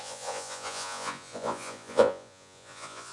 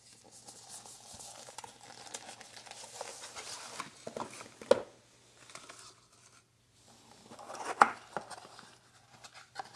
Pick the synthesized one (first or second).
first